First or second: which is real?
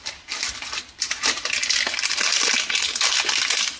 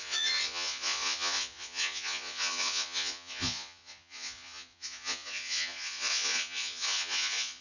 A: first